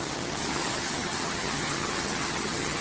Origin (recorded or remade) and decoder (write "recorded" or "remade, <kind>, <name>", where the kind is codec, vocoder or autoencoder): remade, vocoder, HiFi-GAN